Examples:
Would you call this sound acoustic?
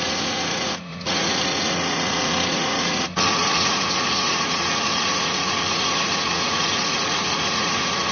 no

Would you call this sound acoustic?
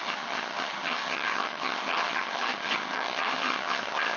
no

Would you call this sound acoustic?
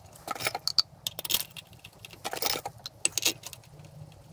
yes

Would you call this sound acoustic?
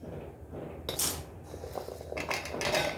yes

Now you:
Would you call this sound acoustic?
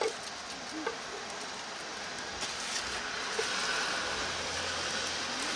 yes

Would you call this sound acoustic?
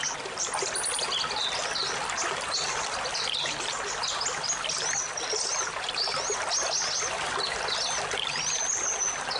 yes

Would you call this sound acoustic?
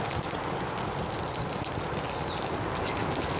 yes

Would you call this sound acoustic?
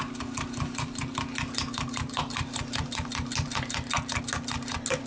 yes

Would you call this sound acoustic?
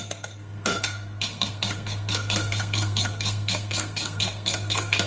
no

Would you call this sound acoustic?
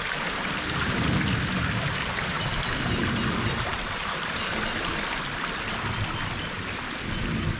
yes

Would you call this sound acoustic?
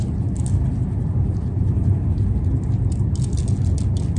yes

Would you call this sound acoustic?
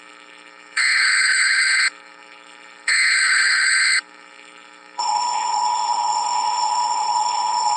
no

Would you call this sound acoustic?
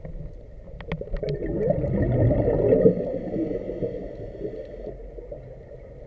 yes